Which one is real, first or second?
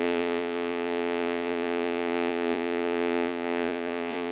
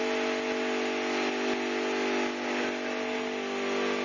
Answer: second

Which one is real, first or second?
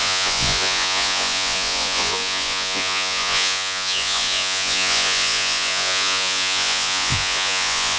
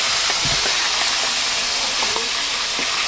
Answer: second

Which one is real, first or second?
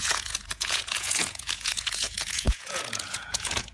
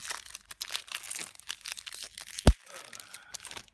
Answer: second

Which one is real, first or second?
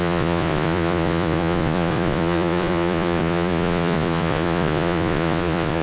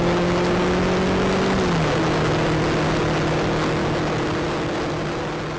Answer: second